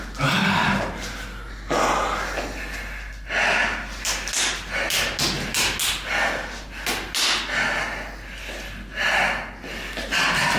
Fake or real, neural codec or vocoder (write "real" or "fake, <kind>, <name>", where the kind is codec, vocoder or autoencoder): real